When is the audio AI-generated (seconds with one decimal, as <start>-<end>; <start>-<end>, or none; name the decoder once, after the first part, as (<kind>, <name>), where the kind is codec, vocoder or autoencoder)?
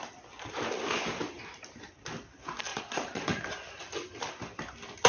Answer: 2.7-3.4 (vocoder, Vocos)